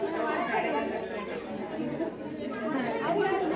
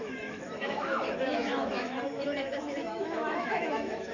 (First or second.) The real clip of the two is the first